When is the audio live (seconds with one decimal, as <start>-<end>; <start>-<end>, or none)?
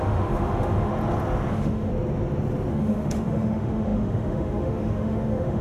0.9-1.5; 1.9-2.7